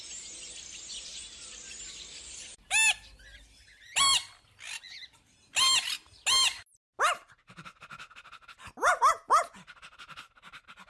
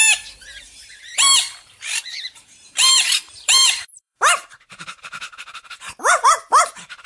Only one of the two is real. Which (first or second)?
first